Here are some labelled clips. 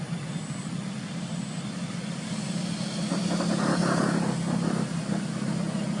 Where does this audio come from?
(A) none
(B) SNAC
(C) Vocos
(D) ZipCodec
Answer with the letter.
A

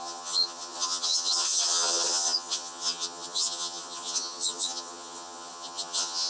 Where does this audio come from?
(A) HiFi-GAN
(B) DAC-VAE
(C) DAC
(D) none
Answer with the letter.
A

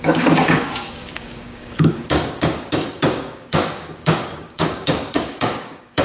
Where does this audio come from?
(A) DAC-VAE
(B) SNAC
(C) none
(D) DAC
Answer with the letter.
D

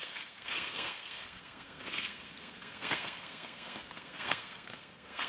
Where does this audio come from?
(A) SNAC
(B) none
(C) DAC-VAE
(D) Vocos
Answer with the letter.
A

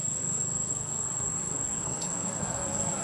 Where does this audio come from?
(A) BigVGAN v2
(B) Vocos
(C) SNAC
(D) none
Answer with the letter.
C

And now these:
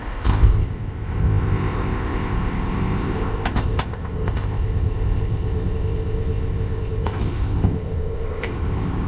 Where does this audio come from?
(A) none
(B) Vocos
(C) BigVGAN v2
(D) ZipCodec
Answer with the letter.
D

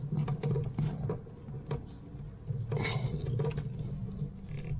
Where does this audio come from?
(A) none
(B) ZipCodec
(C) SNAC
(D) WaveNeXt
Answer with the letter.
A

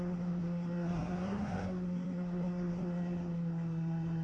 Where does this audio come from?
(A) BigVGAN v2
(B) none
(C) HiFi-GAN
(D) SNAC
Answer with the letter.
D